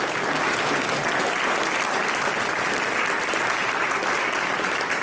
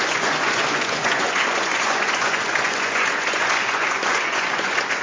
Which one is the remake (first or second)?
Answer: second